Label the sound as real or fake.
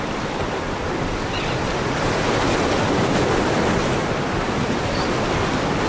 fake